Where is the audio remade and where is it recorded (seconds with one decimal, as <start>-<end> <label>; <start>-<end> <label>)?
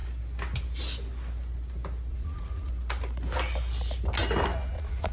0.0-2.1 recorded; 2.1-2.7 remade; 2.7-4.5 recorded; 4.5-5.1 remade